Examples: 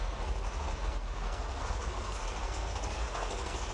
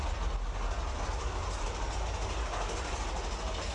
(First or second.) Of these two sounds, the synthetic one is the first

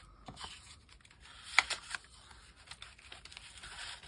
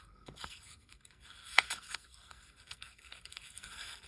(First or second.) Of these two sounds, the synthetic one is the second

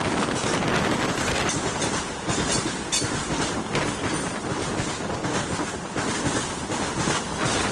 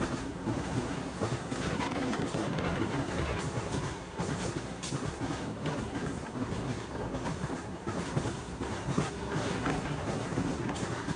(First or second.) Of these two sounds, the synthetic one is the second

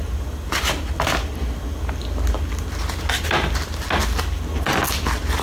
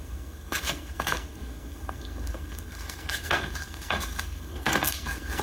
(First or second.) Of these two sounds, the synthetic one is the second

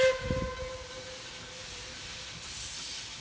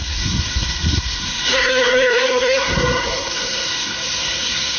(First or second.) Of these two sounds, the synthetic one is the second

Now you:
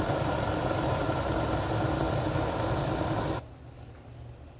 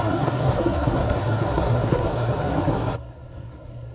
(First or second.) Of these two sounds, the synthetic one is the second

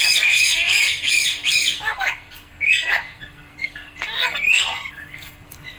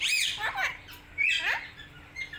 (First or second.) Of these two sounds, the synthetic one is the first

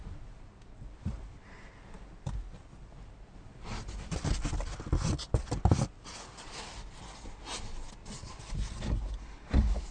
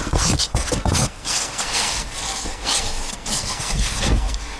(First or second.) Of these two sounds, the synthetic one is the second